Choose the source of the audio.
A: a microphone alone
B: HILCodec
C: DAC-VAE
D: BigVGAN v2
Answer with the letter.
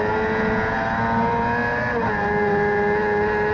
A